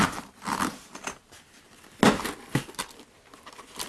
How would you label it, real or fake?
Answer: real